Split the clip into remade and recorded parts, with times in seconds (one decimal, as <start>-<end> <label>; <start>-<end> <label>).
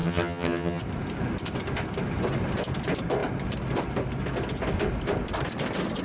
0.0-0.8 remade; 0.8-6.0 recorded